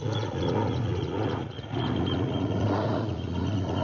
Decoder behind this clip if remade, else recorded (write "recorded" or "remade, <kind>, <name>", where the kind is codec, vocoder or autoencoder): remade, vocoder, Vocos